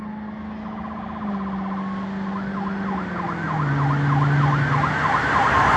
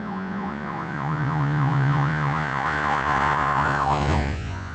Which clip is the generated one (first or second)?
second